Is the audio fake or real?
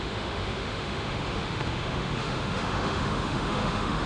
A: fake